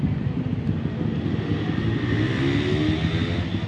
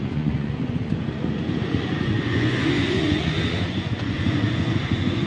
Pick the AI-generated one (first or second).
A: second